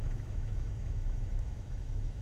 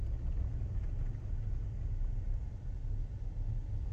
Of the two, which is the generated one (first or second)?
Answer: first